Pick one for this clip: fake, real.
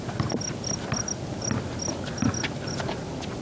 real